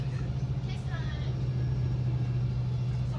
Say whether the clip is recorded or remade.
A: recorded